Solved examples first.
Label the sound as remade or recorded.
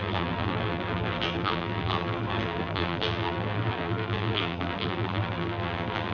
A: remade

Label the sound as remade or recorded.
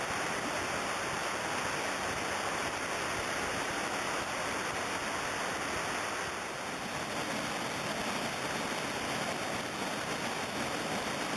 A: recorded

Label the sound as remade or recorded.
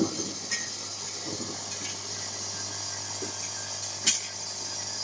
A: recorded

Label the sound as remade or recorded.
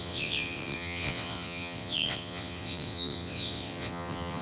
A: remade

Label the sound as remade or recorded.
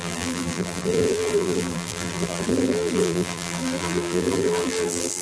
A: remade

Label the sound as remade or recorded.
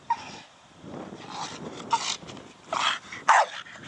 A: recorded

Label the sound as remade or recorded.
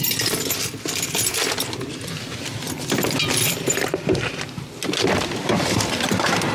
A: remade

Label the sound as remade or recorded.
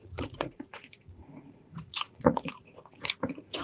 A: remade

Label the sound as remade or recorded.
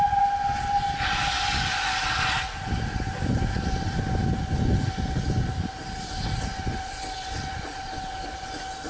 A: recorded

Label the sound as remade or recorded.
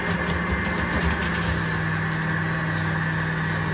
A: recorded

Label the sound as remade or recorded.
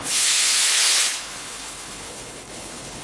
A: remade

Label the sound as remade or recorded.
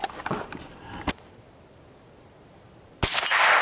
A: recorded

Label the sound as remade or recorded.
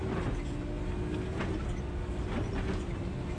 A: recorded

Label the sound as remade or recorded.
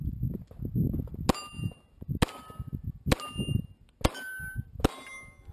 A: recorded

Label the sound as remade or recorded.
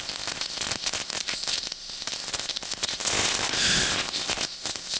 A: remade